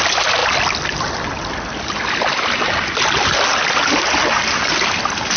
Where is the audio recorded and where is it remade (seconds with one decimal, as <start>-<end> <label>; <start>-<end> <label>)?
0.0-5.4 recorded